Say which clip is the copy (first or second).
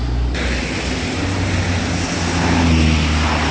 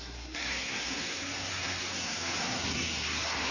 second